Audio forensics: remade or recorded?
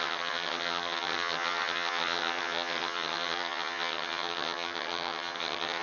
remade